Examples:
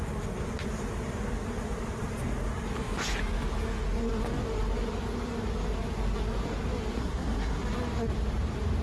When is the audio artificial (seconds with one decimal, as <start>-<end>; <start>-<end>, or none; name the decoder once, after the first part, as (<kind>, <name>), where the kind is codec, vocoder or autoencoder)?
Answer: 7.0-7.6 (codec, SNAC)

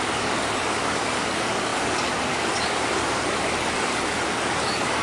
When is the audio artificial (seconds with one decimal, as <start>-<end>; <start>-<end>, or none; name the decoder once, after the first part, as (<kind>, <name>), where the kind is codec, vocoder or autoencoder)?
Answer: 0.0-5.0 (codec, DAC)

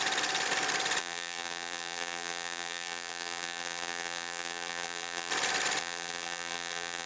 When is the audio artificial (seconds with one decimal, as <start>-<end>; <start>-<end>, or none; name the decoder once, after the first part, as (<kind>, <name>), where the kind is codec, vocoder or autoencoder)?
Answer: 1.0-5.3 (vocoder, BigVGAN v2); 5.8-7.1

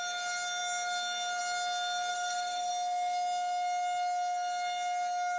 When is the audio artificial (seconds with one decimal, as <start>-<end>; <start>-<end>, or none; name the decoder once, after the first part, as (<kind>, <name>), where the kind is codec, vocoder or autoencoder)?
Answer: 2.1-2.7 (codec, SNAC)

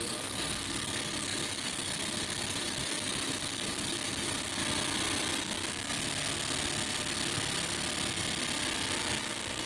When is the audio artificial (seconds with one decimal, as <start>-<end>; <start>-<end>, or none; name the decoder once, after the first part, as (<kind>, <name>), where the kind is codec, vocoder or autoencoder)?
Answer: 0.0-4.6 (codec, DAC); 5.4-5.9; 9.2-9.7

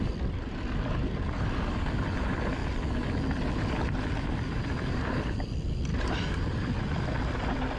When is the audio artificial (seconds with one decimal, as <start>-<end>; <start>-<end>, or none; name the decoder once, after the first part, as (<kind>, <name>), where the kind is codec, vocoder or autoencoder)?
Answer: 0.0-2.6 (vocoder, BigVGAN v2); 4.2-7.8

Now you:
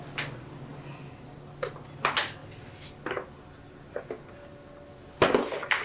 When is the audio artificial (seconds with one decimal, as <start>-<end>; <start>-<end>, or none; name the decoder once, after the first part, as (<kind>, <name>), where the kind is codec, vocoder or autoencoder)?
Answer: none